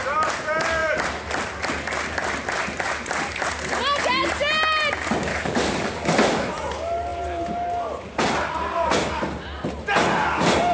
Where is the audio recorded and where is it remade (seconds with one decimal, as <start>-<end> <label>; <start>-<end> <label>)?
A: 0.0-5.3 recorded; 5.3-6.5 remade; 6.5-10.7 recorded